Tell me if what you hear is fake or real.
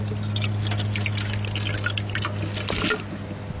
real